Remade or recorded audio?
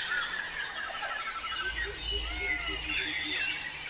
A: recorded